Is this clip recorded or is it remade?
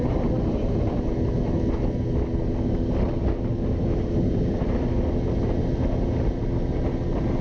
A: recorded